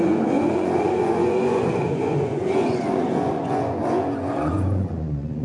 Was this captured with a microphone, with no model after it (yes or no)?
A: no